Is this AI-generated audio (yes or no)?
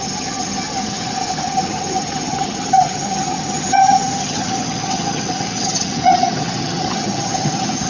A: yes